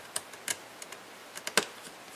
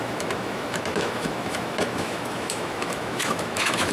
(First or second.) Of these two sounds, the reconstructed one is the second